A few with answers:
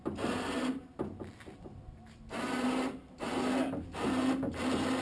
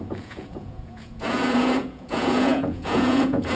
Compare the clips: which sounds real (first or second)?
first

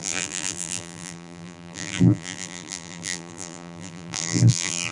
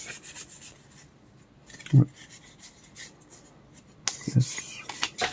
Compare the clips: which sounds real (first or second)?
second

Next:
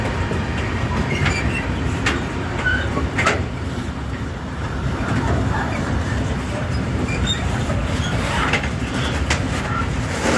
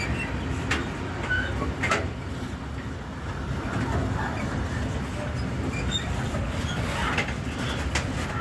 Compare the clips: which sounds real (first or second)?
second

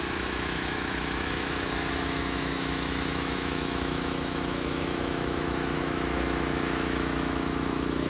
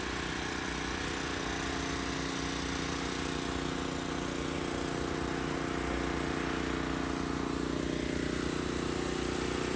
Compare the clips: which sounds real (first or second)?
second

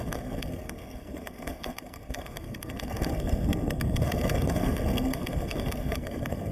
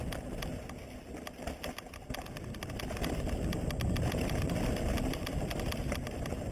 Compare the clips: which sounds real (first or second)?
second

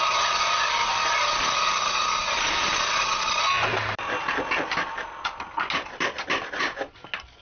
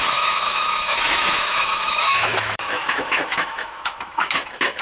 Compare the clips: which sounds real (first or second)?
first